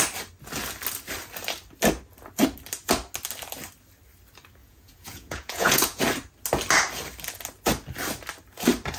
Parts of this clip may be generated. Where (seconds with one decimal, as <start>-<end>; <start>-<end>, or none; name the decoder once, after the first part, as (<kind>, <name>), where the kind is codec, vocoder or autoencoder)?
4.6-6.0 (vocoder, Vocos)